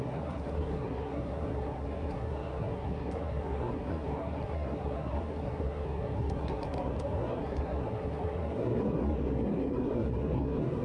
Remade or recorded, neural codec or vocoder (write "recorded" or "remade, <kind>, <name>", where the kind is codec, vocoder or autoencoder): remade, codec, SNAC